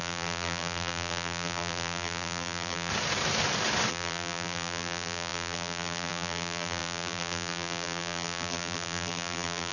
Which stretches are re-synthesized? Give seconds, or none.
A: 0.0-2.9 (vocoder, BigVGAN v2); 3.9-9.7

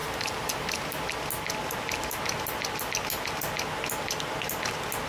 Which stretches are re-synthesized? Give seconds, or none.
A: 0.0-1.1 (vocoder, BigVGAN v2)

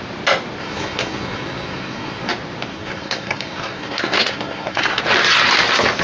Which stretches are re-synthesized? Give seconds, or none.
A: 0.6-2.3 (codec, SNAC); 2.7-5.0

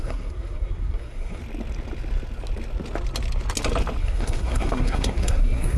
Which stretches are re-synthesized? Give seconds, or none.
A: 0.0-1.4 (codec, SNAC); 4.0-5.8

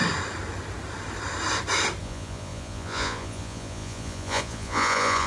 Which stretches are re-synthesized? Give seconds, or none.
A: 2.0-5.3 (vocoder, Vocos)

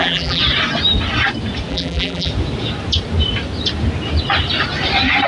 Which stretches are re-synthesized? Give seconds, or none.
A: 0.0-0.4 (vocoder, BigVGAN v2); 1.7-2.3

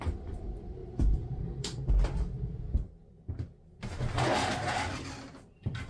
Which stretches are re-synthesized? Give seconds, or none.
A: 0.8-1.4 (vocoder, BigVGAN v2)